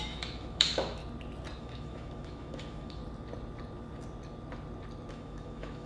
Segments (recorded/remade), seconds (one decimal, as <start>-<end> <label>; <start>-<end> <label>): 0.0-1.0 remade; 1.0-1.6 recorded; 1.6-3.0 remade; 3.0-5.1 recorded; 5.1-5.9 remade